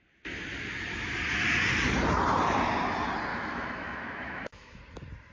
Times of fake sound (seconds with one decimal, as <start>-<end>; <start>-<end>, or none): 3.3-4.8